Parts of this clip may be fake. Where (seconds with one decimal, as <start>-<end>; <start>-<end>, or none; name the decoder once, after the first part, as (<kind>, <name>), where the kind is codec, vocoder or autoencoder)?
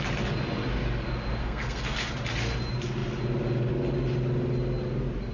1.4-2.1 (codec, SNAC)